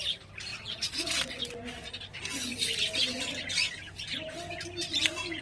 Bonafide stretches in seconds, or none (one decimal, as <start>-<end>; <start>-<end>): 0.0-0.5; 1.4-5.4